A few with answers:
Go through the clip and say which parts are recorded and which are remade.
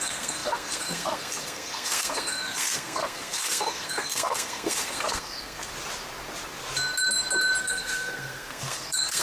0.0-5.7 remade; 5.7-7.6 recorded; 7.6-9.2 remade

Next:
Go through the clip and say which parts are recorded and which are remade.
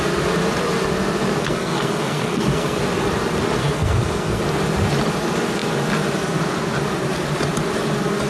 0.0-1.4 recorded; 1.4-2.8 remade; 2.8-3.6 recorded; 3.6-4.4 remade; 4.4-8.3 recorded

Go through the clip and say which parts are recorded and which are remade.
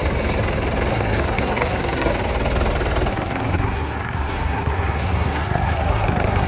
0.0-0.9 recorded; 0.9-2.1 remade; 2.1-3.1 recorded; 3.1-6.5 remade